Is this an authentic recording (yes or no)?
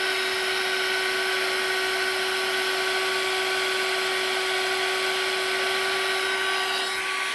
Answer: yes